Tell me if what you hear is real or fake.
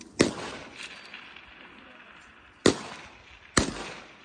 real